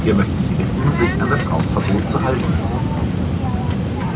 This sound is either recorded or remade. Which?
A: remade